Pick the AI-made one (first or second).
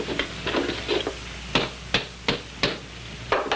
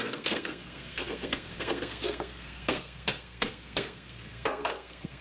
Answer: second